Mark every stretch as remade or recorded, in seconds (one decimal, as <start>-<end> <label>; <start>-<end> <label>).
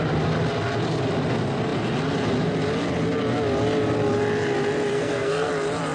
0.0-4.9 recorded; 4.9-5.5 remade; 5.5-5.9 recorded